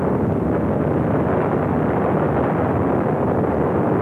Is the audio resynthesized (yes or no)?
no